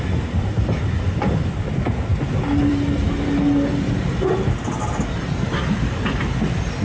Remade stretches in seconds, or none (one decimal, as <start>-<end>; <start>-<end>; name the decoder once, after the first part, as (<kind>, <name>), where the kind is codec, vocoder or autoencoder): none